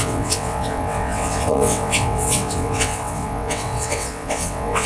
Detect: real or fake fake